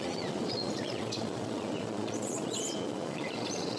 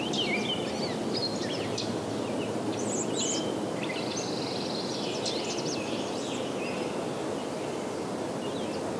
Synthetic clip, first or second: first